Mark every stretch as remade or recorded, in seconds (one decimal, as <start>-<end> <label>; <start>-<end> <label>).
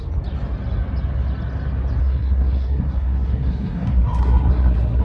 0.0-2.0 recorded; 2.0-5.0 remade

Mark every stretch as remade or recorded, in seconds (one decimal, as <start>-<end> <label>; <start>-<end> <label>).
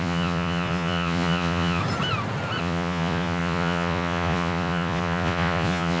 0.0-1.8 remade; 1.8-2.6 recorded; 2.6-6.0 remade